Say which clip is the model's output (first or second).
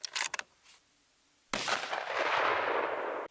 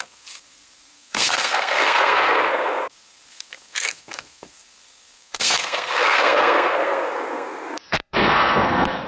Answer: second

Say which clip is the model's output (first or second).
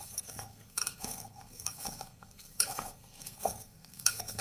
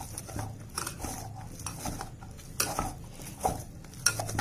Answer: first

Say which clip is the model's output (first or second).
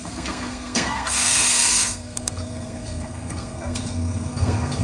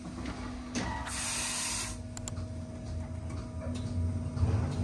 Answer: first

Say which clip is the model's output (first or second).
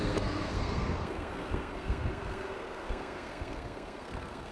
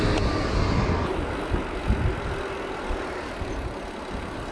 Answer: first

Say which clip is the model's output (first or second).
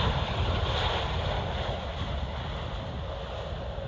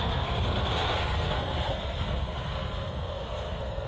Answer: second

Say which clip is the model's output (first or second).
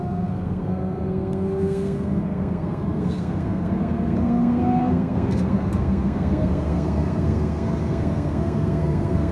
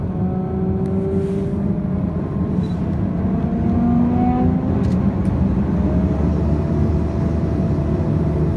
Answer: first